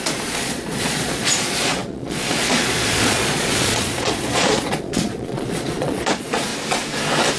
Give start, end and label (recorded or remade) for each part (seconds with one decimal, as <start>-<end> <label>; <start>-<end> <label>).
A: 0.0-6.5 remade; 6.5-7.4 recorded